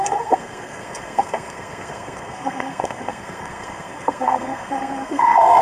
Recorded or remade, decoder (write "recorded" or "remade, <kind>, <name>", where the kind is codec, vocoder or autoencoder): remade, codec, SNAC